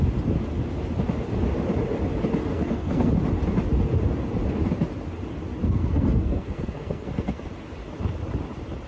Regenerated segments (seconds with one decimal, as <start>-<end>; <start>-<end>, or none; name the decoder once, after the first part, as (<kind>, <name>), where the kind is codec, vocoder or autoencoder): 2.5-3.1 (codec, SNAC); 5.6-7.5